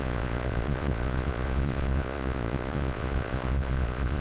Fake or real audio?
fake